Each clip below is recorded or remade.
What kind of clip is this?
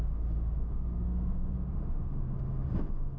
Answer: remade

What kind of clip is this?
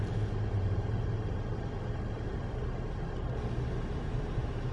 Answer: recorded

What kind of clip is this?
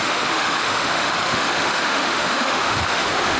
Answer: remade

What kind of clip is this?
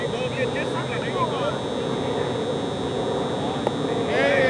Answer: recorded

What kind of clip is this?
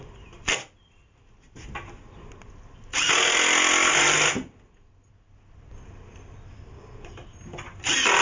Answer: recorded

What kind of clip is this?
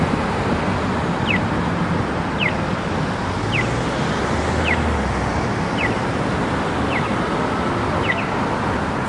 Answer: recorded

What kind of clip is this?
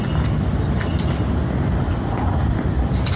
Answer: recorded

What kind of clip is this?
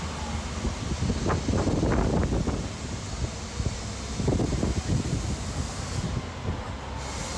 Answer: recorded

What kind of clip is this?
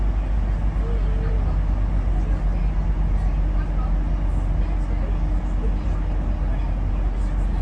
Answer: recorded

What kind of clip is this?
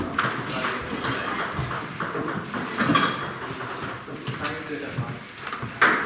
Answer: recorded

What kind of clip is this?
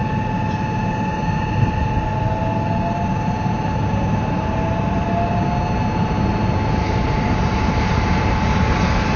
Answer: recorded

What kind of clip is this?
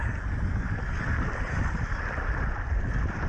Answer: recorded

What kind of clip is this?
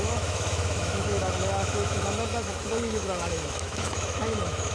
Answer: remade